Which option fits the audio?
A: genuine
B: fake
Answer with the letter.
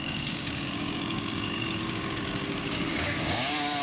B